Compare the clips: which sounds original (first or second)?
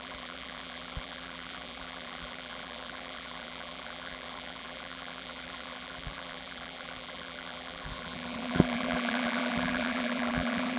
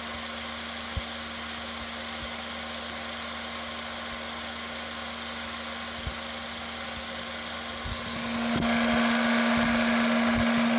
second